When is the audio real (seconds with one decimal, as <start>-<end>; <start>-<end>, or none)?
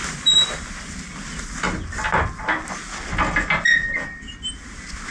0.0-5.1